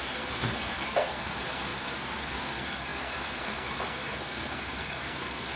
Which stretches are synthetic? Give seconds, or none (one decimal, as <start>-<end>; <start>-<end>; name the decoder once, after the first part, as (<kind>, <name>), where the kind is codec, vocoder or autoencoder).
0.0-5.6 (codec, SNAC)